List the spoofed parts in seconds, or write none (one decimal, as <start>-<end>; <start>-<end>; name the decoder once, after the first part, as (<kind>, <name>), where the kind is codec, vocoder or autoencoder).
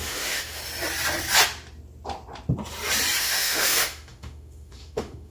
0.0-0.6 (autoencoder, DAC-VAE); 3.2-5.3